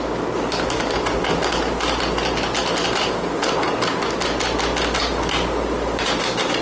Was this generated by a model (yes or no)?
no